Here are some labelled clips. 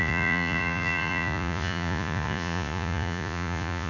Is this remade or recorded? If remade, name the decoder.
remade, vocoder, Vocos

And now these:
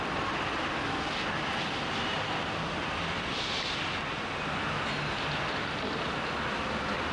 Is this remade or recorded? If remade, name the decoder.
recorded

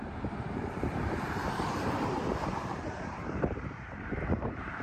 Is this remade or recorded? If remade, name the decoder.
remade, vocoder, BigVGAN v2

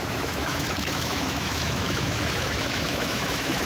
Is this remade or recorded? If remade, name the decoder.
remade, autoencoder, DAC-VAE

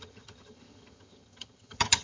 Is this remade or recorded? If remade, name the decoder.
remade, vocoder, HiFi-GAN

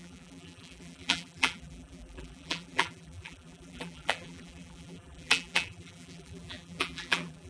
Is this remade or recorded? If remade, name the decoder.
remade, vocoder, BigVGAN v2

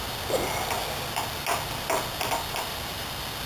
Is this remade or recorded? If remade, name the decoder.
recorded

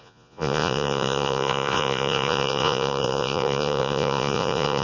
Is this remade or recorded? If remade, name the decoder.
remade, vocoder, Vocos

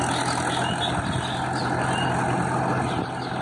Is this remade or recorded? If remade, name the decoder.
recorded